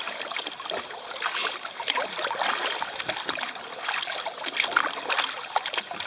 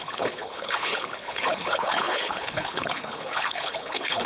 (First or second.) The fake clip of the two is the second